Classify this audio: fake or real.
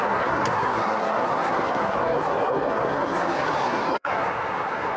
fake